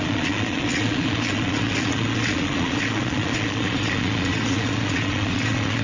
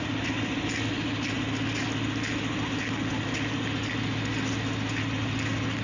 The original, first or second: second